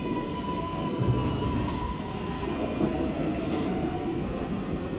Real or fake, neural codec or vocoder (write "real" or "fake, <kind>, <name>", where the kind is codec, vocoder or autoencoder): fake, codec, SNAC